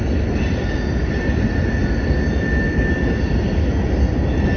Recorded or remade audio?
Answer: recorded